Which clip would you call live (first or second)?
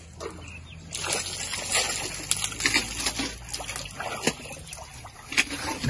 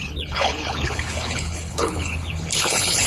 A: first